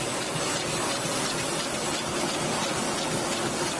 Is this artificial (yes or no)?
no